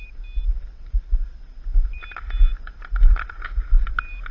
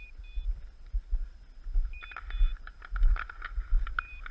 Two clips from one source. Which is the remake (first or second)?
second